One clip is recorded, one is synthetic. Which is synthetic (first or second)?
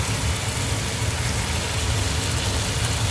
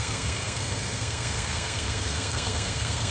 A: second